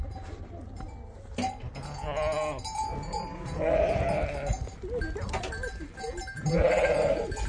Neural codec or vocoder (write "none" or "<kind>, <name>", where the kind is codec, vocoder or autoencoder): none